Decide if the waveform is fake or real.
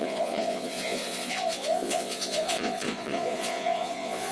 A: fake